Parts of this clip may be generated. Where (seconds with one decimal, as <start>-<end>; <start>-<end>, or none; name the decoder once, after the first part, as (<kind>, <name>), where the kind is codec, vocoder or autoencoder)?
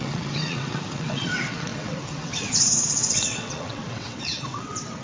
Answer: 0.0-5.0 (vocoder, WaveNeXt)